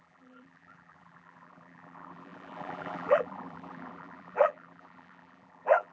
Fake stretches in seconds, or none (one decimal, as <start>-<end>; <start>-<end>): 0.0-5.9

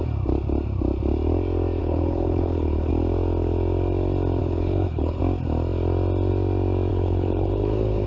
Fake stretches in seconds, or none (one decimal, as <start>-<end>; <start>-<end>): 1.8-2.9; 4.4-5.2; 6.9-8.1